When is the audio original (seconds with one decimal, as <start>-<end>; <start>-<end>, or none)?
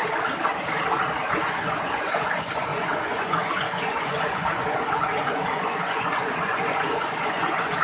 0.0-1.3